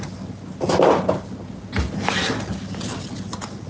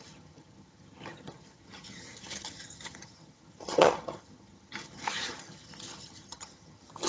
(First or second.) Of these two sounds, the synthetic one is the second